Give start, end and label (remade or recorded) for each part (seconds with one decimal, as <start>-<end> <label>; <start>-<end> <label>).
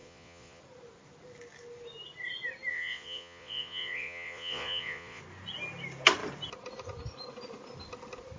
0.0-0.6 remade; 0.6-2.7 recorded; 2.7-5.2 remade; 5.2-8.4 recorded